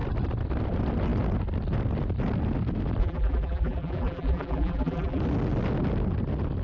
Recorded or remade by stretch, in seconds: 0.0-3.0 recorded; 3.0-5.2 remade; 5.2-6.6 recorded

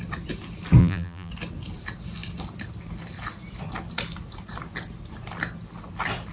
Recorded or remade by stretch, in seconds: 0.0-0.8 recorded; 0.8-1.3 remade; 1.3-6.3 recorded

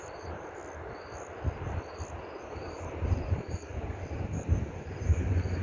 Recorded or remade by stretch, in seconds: 0.0-0.6 remade; 0.6-2.4 recorded; 2.4-3.7 remade; 3.7-4.3 recorded; 4.3-5.6 remade

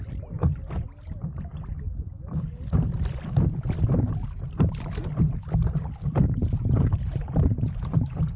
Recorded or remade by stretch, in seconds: 0.0-8.4 recorded

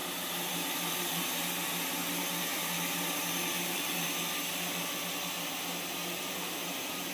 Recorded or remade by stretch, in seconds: 0.0-1.3 remade; 1.3-2.5 recorded; 2.5-4.5 remade; 4.5-6.0 recorded; 6.0-7.1 remade

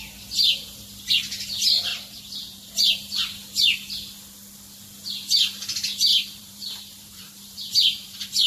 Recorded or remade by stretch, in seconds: 0.0-1.9 recorded; 1.9-2.7 remade; 2.7-6.1 recorded; 6.1-8.5 remade

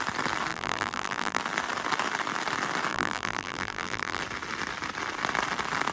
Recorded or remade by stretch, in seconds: 0.0-0.5 recorded; 0.5-1.4 remade; 1.4-2.9 recorded; 2.9-4.2 remade; 4.2-5.9 recorded

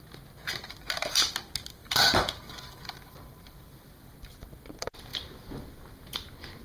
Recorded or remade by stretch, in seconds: 0.0-0.8 recorded; 0.8-1.3 remade; 1.3-1.8 recorded; 1.8-4.1 remade; 4.1-6.6 recorded